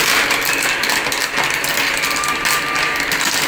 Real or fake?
real